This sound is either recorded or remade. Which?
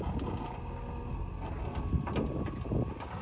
recorded